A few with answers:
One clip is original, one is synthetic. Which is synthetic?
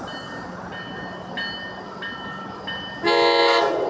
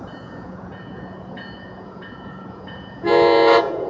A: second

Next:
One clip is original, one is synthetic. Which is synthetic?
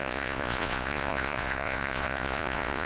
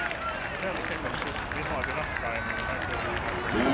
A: first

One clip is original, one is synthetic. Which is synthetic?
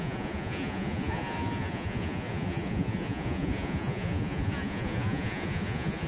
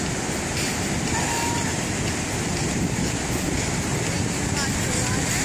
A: first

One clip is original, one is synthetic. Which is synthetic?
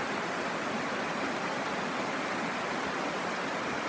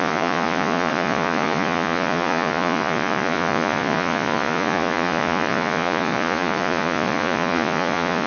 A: second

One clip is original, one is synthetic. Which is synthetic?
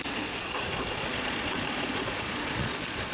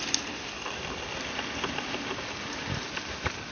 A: first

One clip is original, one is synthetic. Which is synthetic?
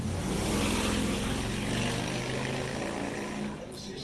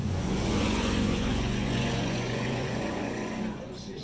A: second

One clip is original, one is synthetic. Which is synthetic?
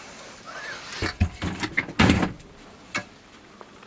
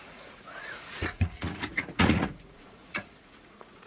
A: second